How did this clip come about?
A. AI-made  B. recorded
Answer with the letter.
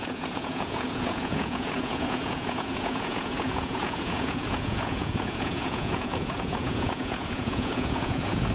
A